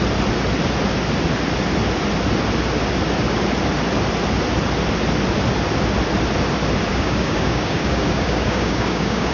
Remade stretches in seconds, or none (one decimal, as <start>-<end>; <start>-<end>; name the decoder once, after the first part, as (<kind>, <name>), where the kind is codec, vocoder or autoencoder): 6.9-9.3 (codec, DAC)

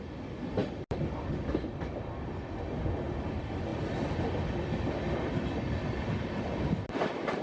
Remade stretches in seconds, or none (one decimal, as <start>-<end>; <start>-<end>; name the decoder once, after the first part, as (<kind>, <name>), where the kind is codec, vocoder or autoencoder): none